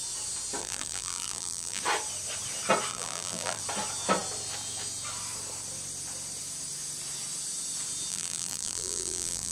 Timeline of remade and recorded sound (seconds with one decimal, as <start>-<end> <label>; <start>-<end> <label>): 0.0-0.6 recorded; 0.6-1.8 remade; 1.8-2.9 recorded; 2.9-3.6 remade; 3.6-8.1 recorded; 8.1-9.5 remade